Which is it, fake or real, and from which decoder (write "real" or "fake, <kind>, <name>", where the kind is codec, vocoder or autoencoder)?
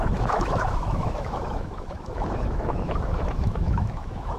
fake, autoencoder, DAC-VAE